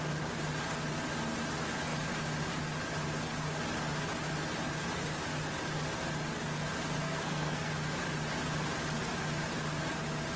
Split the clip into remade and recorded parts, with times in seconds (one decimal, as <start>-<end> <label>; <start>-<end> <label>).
0.0-7.0 recorded; 7.0-7.7 remade; 7.7-10.4 recorded